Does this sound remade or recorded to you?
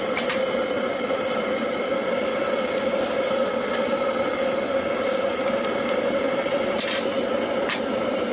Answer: recorded